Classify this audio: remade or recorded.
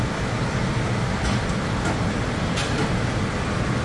recorded